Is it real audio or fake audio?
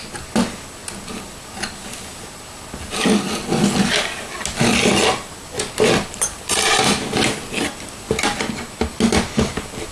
real